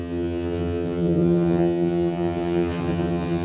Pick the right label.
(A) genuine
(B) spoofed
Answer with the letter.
B